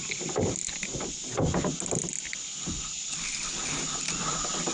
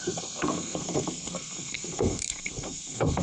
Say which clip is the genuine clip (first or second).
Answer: first